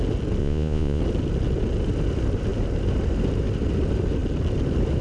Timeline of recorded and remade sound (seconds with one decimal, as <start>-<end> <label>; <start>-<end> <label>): 0.0-0.4 recorded; 0.4-1.0 remade; 1.0-5.0 recorded